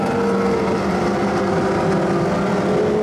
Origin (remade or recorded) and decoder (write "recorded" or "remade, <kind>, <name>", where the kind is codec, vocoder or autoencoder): recorded